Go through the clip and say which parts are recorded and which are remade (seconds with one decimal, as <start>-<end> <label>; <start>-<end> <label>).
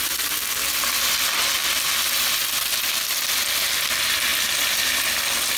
0.0-5.6 recorded